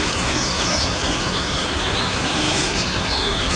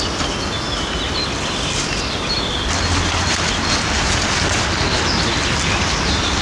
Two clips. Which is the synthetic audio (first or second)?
first